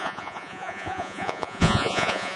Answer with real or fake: fake